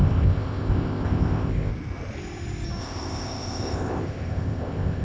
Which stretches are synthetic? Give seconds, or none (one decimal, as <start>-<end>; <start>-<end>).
0.0-1.7; 2.8-5.0